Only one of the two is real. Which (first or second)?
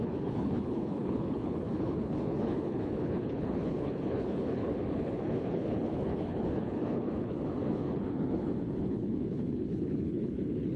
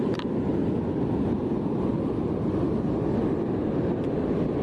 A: second